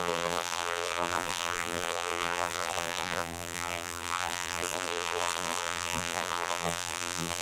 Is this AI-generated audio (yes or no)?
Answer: yes